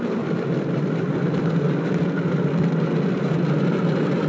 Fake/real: real